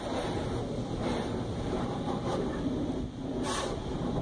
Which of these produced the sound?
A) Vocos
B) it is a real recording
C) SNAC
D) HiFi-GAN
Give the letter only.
B